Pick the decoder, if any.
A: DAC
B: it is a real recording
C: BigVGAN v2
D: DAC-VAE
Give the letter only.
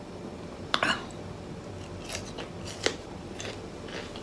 C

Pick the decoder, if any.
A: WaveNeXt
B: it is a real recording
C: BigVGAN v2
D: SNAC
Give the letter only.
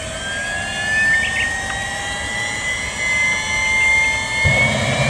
B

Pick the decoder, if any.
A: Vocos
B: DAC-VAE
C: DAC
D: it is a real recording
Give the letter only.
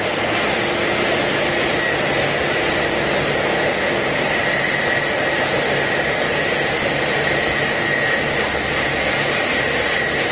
D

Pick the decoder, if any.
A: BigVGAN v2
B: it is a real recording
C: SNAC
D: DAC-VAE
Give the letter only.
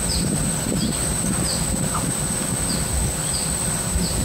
B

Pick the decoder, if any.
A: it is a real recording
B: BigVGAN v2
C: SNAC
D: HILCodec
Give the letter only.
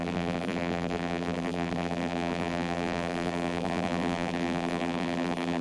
B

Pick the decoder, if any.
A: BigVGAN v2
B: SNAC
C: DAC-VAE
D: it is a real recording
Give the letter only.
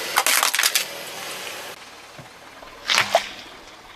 D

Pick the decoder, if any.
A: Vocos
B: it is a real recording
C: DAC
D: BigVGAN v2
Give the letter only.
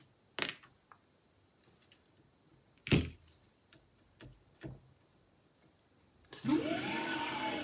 B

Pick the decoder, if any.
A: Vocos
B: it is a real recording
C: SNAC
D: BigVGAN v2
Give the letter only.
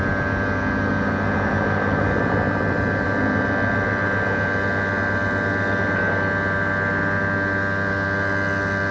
B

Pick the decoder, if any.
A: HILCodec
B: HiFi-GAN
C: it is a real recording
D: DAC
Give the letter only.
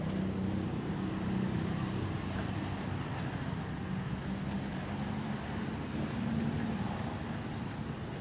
C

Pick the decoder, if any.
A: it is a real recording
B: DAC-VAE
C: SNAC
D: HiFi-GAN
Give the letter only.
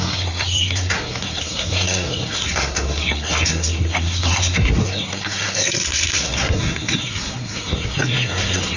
C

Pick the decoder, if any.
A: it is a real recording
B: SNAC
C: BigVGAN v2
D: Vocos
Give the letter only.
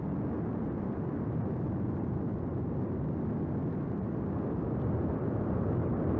A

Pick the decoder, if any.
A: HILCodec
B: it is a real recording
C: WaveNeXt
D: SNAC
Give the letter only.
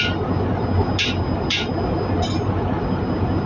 B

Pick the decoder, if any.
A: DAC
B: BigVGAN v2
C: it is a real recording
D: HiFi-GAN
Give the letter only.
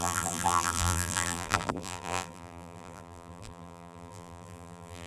B